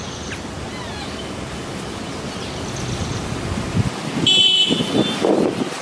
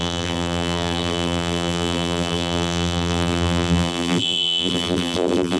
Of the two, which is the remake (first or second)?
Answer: second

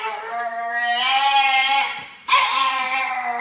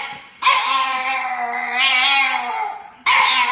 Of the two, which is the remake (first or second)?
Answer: first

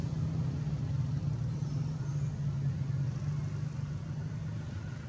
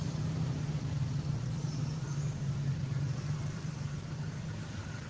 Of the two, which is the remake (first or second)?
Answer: second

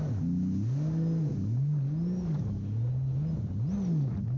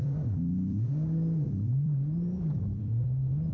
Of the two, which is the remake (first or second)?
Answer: second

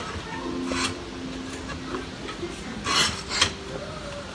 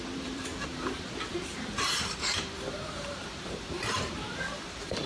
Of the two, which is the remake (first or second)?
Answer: second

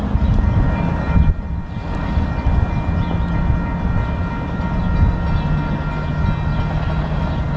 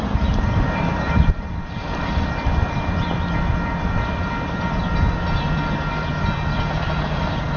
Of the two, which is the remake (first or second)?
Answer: second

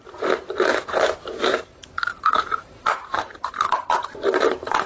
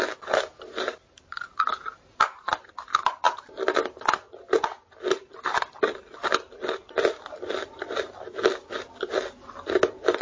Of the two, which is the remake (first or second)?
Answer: first